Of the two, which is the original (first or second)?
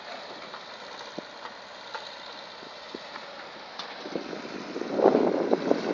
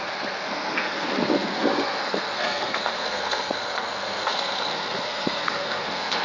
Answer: first